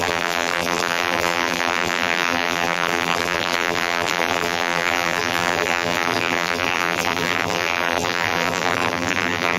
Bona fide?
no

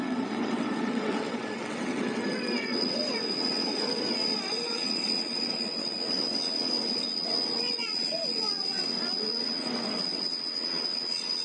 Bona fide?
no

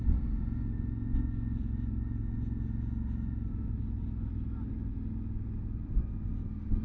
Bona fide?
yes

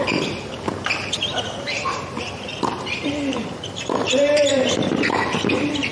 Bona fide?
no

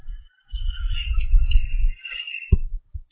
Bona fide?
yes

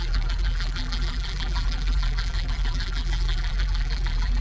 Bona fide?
no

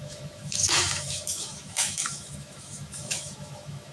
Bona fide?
no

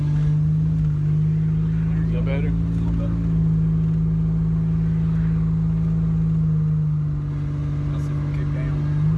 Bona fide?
yes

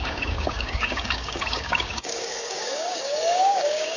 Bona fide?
no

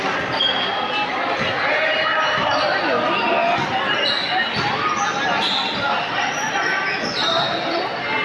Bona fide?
yes